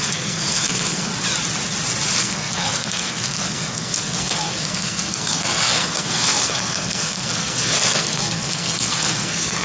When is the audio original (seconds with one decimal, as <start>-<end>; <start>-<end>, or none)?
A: 1.1-2.2